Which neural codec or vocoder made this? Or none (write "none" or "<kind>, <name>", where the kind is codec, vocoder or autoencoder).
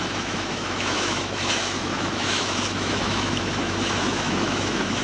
autoencoder, DAC-VAE